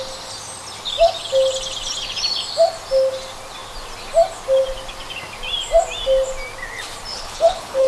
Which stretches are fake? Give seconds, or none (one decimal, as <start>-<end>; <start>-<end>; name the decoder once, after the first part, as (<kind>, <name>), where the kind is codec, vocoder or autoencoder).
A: 7.1-7.9 (codec, HILCodec)